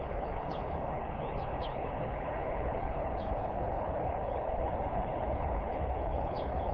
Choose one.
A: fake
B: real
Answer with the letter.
A